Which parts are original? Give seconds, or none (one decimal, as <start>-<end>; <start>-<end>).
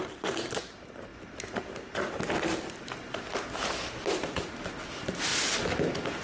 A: 0.0-6.2